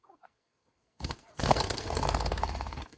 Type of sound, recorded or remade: remade